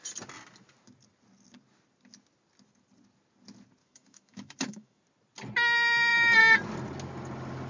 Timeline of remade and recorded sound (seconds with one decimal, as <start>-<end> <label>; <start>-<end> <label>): 0.0-3.8 recorded; 3.8-5.0 remade; 5.0-7.7 recorded